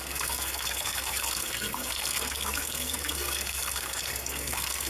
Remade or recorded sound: remade